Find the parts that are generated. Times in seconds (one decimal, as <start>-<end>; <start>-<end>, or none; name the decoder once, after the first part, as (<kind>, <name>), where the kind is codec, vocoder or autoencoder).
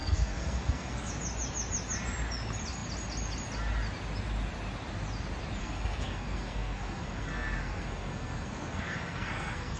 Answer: 0.0-1.1 (codec, SNAC); 5.6-9.8